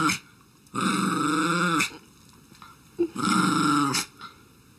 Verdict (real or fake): real